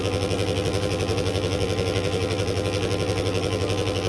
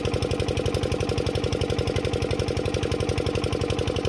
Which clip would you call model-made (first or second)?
first